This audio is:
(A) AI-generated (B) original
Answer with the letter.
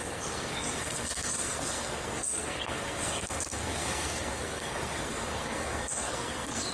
A